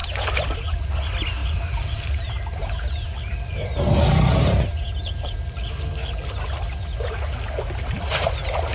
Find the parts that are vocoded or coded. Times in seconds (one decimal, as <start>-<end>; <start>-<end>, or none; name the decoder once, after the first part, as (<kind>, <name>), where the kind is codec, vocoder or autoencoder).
0.0-0.9 (vocoder, BigVGAN v2); 1.4-5.6